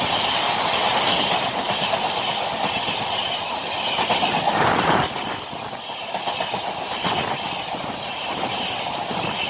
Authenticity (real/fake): real